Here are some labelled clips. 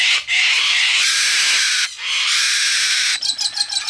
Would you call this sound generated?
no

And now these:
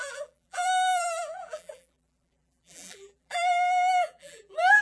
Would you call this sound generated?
yes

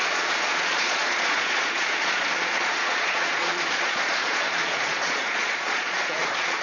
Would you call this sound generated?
yes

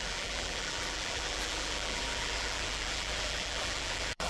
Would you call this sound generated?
yes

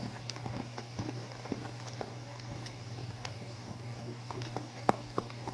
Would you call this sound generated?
yes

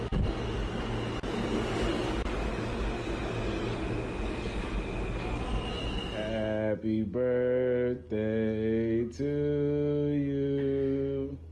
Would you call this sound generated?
no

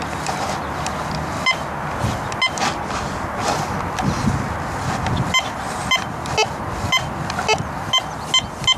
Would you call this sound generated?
no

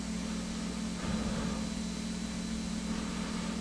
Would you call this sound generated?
no